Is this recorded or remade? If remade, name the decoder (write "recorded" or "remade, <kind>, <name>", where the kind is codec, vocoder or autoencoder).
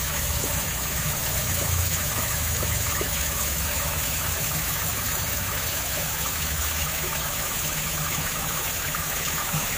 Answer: remade, autoencoder, DAC-VAE